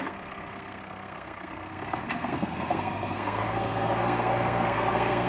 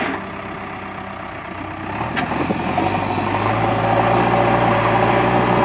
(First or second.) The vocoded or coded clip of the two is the first